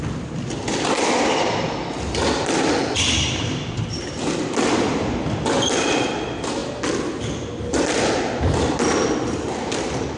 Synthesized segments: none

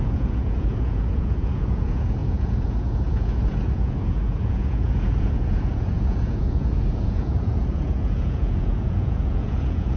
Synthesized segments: 0.0-10.0 (vocoder, Vocos)

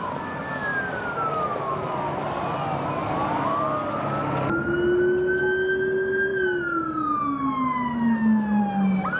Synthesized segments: none

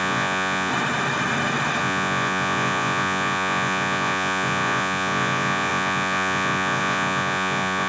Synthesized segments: 0.0-0.7 (vocoder, Vocos); 1.8-7.9

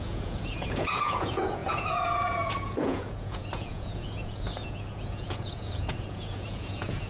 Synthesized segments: 0.0-7.1 (vocoder, Vocos)